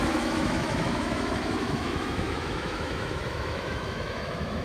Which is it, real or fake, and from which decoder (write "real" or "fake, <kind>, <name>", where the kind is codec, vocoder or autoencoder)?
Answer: fake, autoencoder, DAC-VAE